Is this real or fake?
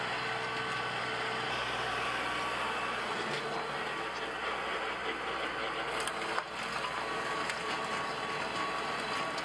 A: real